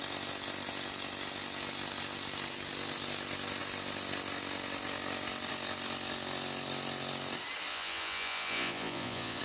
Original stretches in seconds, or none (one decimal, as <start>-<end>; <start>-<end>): 0.0-7.7